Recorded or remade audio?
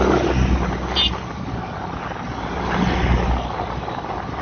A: recorded